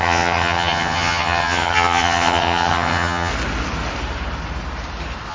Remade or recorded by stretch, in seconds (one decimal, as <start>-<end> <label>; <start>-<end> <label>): 0.0-3.3 remade; 3.3-5.3 recorded